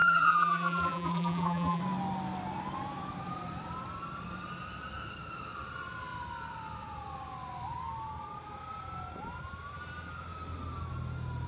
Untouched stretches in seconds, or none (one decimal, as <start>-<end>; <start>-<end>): 1.8-11.5